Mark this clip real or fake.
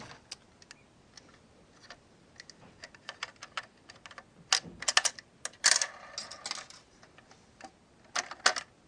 real